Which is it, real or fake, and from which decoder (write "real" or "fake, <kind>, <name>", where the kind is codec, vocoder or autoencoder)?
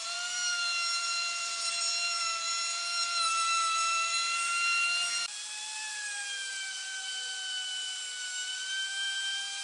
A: fake, vocoder, BigVGAN v2